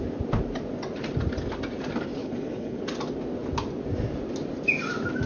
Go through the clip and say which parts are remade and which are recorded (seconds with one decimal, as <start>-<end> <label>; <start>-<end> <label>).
0.0-2.2 recorded; 2.2-2.8 remade; 2.8-5.3 recorded